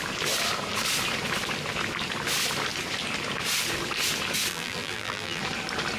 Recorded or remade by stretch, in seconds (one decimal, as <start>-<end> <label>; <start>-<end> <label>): 0.0-4.5 recorded; 4.5-5.4 remade; 5.4-6.0 recorded